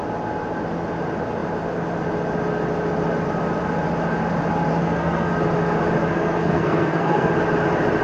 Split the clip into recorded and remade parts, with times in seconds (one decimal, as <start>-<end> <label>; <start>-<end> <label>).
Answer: 0.0-4.7 recorded; 4.7-5.3 remade; 5.3-6.1 recorded; 6.1-7.3 remade; 7.3-8.0 recorded